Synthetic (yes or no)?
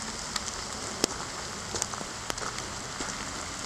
no